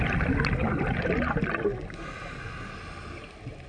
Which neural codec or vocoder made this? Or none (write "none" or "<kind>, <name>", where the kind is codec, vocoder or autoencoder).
none